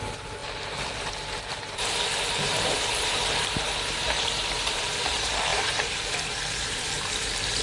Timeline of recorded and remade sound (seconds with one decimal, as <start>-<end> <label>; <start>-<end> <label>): 0.0-7.6 remade